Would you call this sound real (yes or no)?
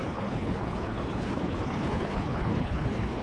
no